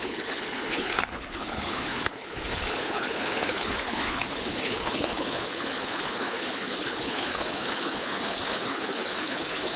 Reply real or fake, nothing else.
fake